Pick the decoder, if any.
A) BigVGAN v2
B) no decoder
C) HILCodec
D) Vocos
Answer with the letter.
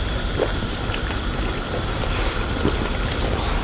A